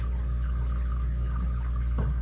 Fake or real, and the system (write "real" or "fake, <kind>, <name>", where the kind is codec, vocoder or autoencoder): real